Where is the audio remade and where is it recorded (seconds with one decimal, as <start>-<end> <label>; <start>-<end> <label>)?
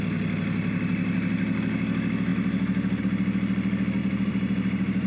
0.0-4.0 recorded; 4.0-5.1 remade